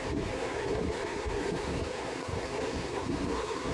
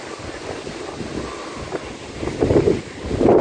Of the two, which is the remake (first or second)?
first